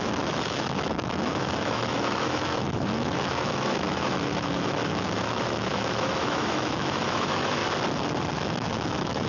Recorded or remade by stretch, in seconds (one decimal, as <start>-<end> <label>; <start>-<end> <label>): 0.0-7.6 remade; 7.6-8.3 recorded; 8.3-9.3 remade